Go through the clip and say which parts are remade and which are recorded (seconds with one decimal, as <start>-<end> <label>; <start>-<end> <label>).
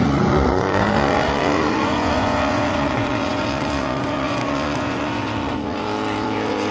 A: 0.0-6.7 remade